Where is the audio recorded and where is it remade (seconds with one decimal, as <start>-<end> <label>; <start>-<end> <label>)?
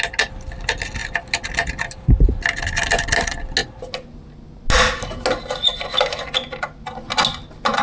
0.0-7.8 recorded